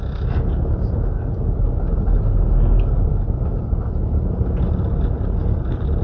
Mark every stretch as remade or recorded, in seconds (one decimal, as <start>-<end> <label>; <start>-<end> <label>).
0.0-6.0 recorded